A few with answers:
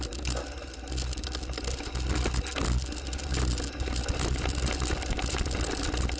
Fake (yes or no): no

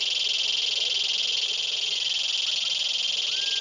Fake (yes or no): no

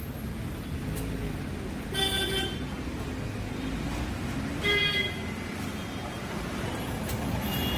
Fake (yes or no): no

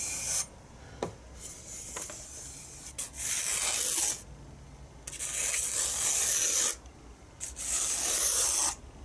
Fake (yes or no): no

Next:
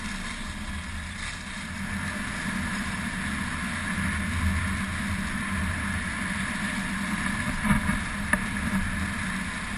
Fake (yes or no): no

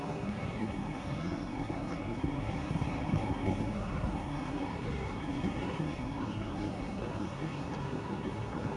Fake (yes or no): yes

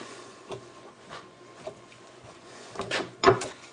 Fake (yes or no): yes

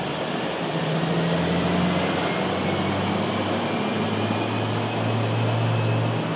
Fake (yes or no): no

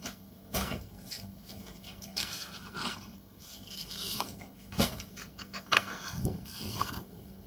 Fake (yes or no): yes